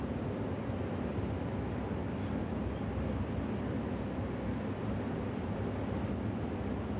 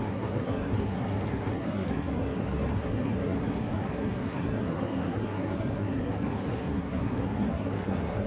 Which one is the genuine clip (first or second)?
first